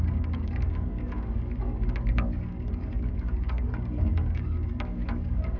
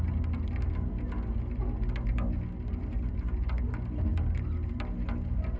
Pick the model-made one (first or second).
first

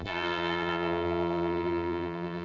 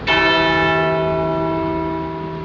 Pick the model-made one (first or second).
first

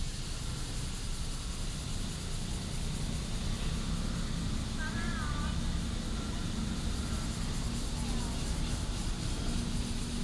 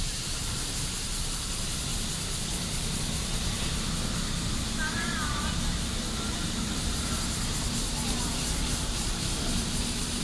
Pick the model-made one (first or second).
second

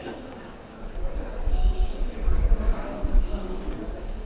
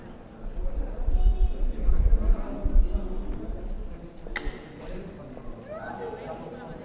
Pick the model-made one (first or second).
first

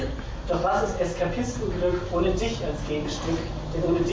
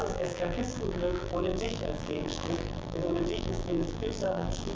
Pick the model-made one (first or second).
second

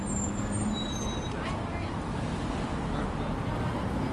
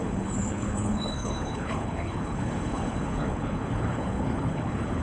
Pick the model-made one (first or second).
second